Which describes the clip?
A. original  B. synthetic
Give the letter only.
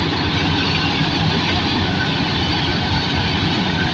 A